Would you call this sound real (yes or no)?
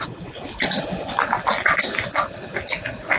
yes